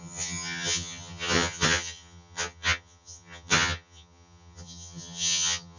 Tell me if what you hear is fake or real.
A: fake